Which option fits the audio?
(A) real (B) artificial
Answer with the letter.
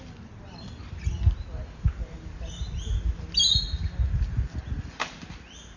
A